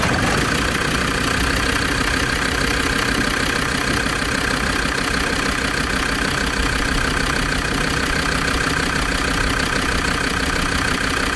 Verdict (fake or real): real